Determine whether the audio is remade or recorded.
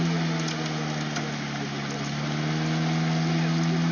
recorded